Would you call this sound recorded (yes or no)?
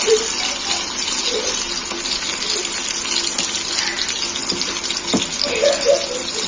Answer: yes